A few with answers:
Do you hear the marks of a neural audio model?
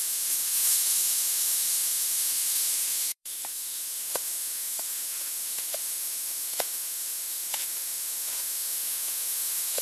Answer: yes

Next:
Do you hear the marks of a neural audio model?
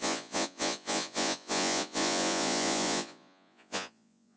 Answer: yes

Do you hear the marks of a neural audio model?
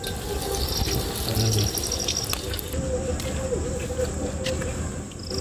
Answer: no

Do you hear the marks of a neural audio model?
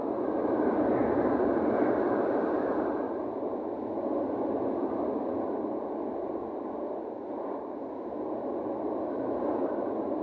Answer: no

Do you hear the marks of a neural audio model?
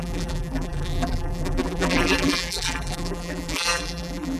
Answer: yes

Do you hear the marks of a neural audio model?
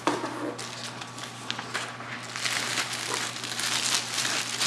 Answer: no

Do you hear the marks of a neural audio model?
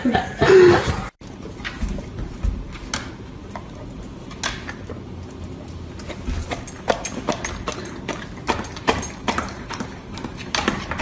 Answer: no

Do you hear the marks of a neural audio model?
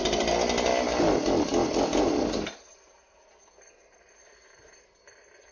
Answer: no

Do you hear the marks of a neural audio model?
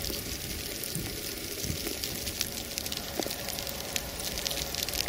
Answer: yes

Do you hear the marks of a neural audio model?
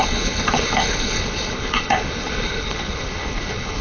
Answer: yes